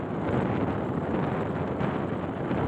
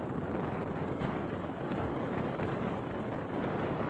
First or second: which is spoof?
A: second